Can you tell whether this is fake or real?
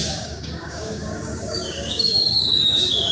fake